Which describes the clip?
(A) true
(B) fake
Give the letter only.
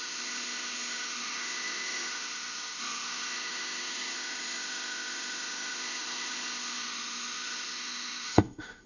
B